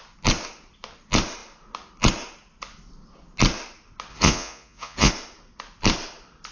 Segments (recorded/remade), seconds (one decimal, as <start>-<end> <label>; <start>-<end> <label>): 0.0-4.1 recorded; 4.1-5.1 remade; 5.1-6.5 recorded